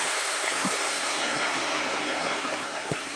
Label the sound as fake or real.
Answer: fake